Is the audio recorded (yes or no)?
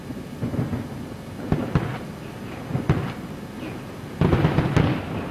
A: yes